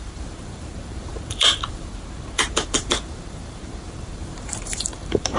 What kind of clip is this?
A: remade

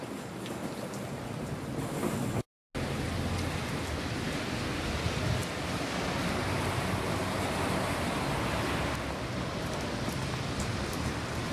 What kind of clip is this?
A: recorded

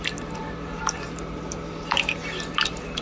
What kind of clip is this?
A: recorded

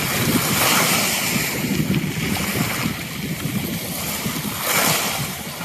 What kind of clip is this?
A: recorded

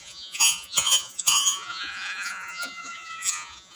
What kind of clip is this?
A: remade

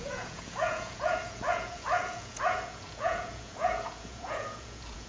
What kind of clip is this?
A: remade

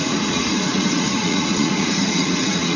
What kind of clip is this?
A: remade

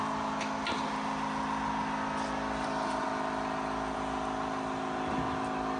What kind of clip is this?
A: recorded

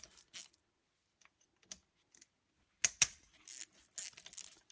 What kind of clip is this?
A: recorded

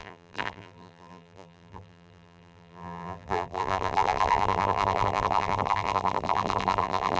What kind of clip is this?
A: remade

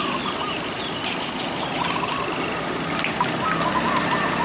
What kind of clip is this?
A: recorded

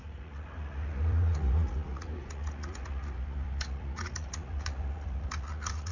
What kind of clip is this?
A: remade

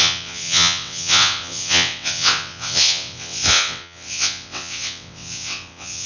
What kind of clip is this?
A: remade